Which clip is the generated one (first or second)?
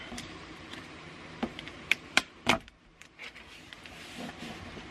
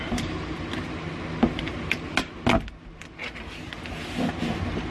first